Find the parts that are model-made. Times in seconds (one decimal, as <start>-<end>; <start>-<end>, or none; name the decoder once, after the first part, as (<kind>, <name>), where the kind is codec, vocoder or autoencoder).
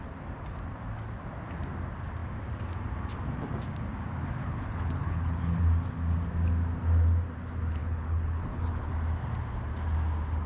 4.4-5.6 (codec, HILCodec); 7.8-8.9